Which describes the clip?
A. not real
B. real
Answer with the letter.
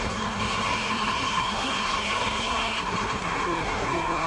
A